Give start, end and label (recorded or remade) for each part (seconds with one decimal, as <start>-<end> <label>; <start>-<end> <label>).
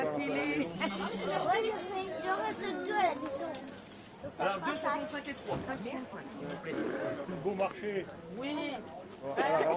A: 0.0-0.4 recorded; 0.4-2.2 remade; 2.2-2.8 recorded; 2.8-3.6 remade; 3.6-9.8 recorded